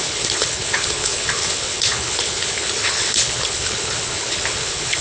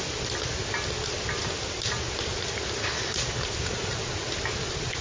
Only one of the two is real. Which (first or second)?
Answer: second